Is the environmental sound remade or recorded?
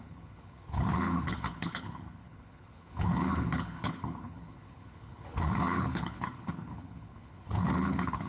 remade